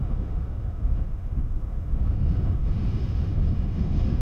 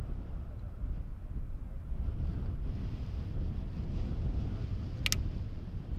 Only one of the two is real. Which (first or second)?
second